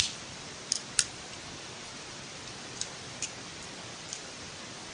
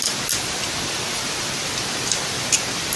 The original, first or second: second